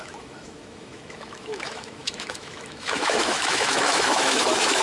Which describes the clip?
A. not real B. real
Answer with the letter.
A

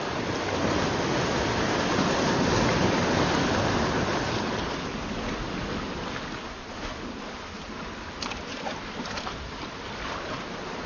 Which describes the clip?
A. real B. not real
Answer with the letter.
A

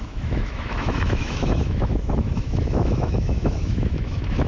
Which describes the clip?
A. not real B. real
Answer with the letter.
A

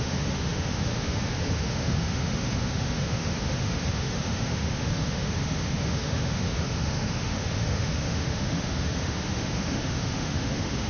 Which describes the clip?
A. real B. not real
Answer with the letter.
B